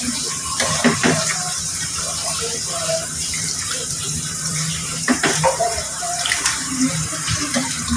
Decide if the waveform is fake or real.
fake